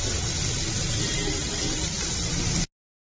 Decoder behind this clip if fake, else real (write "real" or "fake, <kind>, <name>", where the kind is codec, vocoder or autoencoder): real